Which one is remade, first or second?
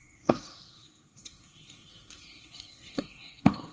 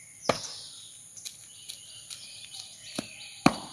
first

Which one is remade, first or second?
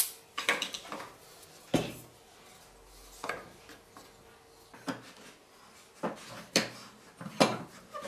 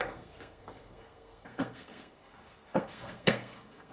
second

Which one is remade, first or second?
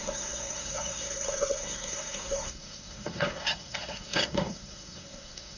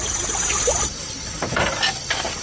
first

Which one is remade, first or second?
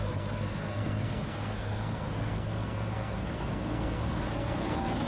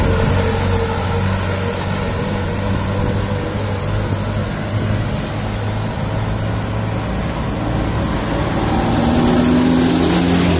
first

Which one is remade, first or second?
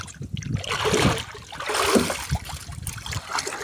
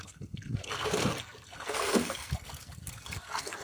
second